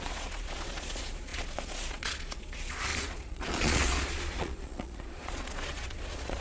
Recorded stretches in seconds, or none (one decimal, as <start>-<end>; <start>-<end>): none